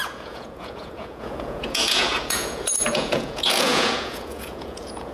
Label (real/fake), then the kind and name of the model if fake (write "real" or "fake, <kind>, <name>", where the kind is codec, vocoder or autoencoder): fake, vocoder, Vocos